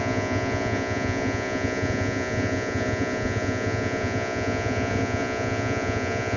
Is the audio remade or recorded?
remade